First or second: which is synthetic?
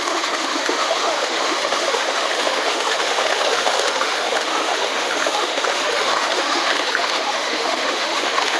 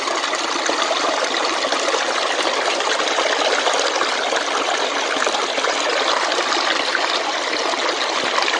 first